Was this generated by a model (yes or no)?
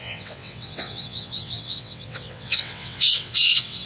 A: yes